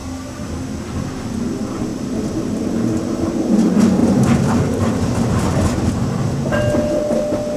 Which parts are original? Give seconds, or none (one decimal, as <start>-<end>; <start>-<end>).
0.0-1.9; 2.7-4.0; 5.9-7.6